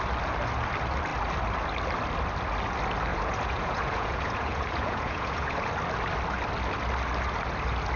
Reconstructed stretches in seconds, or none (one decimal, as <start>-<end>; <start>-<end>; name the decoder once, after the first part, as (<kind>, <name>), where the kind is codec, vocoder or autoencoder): 3.1-5.6 (vocoder, Vocos)